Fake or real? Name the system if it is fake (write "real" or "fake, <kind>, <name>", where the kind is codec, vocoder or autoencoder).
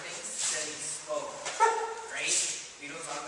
fake, vocoder, BigVGAN v2